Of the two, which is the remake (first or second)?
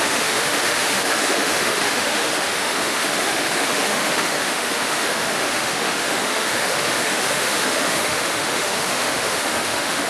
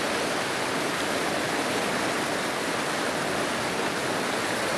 first